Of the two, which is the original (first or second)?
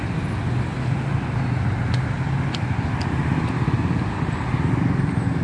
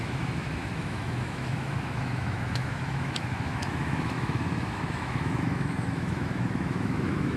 first